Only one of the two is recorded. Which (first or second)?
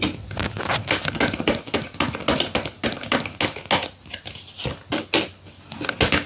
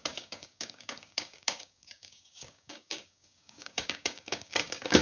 first